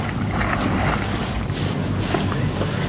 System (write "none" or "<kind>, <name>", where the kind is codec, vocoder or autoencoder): none